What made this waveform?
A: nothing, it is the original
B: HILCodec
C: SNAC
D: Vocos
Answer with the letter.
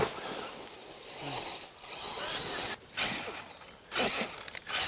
A